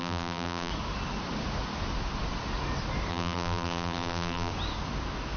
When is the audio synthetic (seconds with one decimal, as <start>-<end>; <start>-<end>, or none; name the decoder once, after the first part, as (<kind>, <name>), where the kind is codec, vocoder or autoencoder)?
0.0-0.7 (vocoder, BigVGAN v2); 3.1-4.5